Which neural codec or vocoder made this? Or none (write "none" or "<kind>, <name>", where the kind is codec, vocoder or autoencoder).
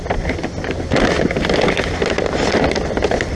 none